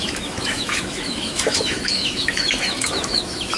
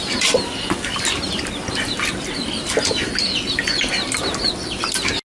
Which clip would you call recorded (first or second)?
second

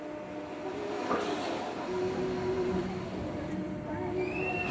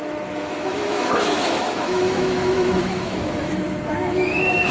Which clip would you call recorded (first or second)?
first